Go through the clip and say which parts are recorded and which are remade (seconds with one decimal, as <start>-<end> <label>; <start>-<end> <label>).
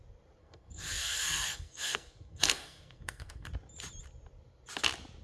0.0-0.4 recorded; 0.4-3.5 remade; 3.5-5.2 recorded